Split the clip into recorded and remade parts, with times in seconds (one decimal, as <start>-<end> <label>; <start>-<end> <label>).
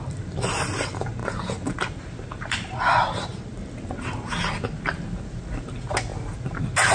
0.0-6.9 recorded